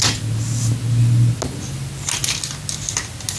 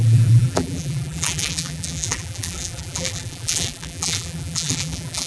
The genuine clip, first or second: first